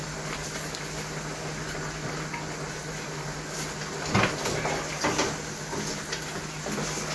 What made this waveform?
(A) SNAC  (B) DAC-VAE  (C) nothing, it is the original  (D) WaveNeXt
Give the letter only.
C